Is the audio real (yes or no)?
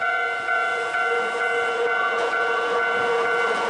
no